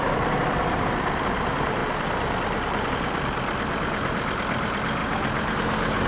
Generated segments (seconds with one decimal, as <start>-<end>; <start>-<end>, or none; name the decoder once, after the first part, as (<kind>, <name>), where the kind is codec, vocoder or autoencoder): 0.0-1.8 (vocoder, BigVGAN v2); 2.9-5.0